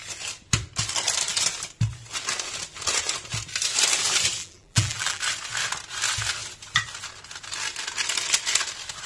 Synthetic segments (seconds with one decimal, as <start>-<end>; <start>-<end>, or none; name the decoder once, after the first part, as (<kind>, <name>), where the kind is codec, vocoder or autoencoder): 4.4-5.2 (vocoder, BigVGAN v2)